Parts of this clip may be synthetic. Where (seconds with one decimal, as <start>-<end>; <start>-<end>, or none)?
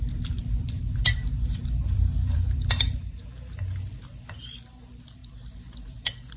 0.4-3.0; 5.2-6.4